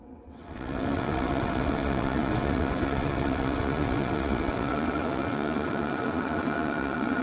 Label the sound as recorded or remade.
remade